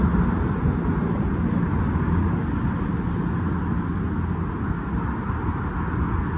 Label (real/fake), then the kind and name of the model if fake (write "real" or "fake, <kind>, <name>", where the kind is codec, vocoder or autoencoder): real